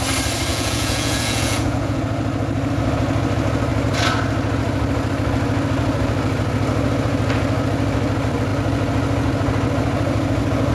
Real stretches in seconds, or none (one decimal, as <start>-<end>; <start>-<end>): 0.0-0.5; 2.0-10.7